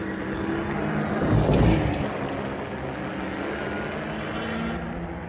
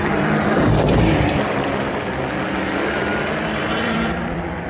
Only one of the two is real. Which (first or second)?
first